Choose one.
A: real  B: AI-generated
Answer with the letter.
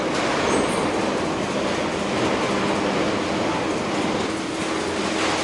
A